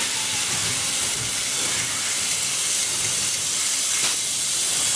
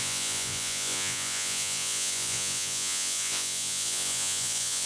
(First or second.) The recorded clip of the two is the first